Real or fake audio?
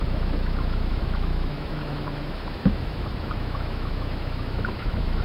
fake